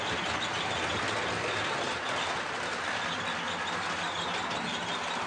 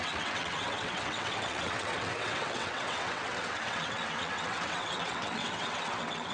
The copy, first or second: second